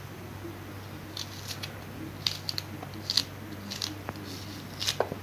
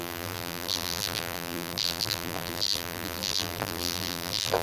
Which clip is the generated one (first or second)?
second